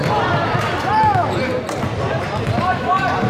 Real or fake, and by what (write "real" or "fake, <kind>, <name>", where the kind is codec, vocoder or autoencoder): real